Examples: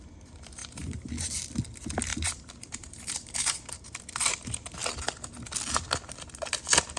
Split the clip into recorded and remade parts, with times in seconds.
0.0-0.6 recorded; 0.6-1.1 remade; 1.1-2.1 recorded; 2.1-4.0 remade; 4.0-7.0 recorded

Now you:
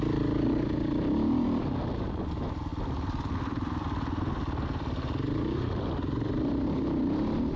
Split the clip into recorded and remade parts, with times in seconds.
0.0-2.7 recorded; 2.7-7.6 remade